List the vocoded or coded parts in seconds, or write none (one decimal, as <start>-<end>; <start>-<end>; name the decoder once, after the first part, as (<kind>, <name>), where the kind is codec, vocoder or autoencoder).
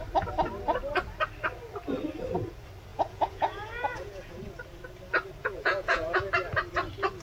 2.9-4.4 (vocoder, Vocos); 5.4-6.3